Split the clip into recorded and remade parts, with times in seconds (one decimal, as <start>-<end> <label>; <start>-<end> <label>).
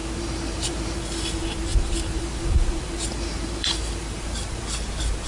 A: 0.0-1.0 remade; 1.0-1.7 recorded; 1.7-4.6 remade; 4.6-5.3 recorded